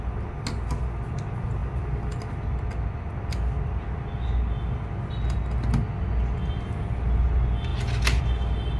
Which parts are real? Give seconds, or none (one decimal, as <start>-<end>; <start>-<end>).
0.0-8.8